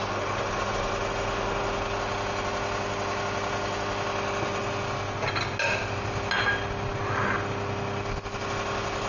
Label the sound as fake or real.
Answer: real